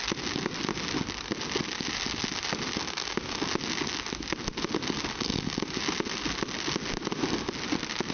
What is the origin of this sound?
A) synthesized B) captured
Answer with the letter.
B